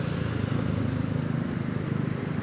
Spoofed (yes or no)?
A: no